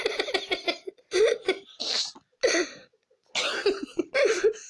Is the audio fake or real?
real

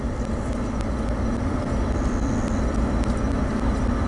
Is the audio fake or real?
real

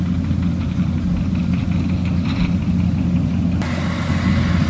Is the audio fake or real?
real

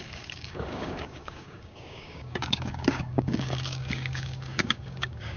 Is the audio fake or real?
fake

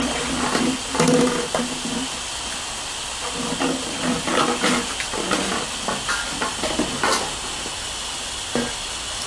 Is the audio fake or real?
real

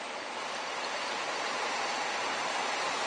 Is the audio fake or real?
fake